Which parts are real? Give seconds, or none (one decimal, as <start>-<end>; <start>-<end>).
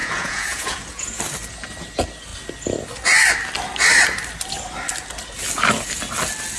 1.2-6.6